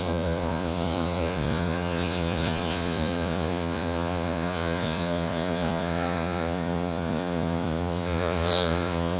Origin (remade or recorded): remade